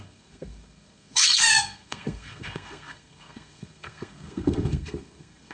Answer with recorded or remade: remade